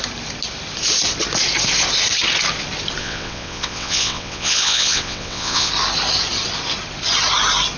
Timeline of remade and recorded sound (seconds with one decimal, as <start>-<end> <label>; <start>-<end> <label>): 0.0-3.0 recorded; 3.0-5.7 remade; 5.7-7.8 recorded